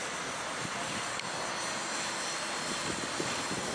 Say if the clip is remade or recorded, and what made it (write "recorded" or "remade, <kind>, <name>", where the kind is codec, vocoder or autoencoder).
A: recorded